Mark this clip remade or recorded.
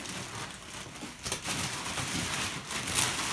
recorded